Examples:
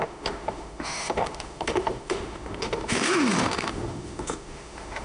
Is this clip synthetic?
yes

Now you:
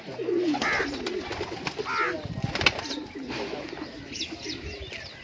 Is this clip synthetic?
no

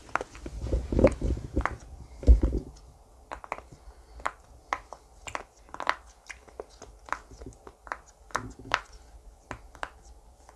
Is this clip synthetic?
no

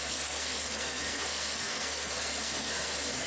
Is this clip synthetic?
yes